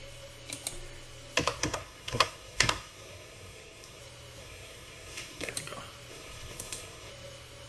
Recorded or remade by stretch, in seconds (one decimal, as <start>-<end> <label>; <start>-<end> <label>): 0.0-1.6 recorded; 1.6-4.0 remade; 4.0-4.4 recorded; 4.4-5.5 remade; 5.5-6.1 recorded; 6.1-7.1 remade; 7.1-7.7 recorded